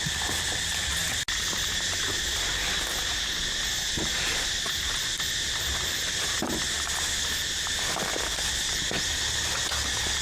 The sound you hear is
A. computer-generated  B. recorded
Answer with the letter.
B